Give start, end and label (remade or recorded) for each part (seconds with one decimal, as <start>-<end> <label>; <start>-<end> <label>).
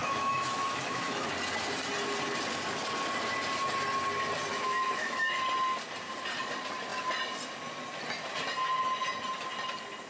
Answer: 0.0-1.3 remade; 1.3-4.5 recorded; 4.5-5.4 remade; 5.4-10.1 recorded